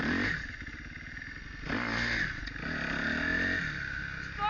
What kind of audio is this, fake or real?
real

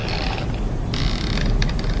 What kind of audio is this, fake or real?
fake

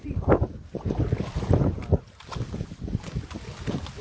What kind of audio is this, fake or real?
real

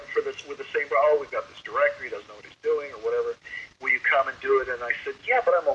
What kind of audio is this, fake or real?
real